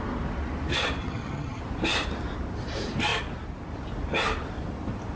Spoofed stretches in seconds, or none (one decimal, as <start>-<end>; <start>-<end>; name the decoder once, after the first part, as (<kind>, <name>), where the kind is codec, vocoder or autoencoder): 1.0-1.6 (vocoder, HiFi-GAN)